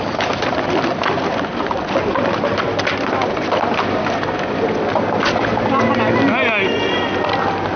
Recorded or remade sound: recorded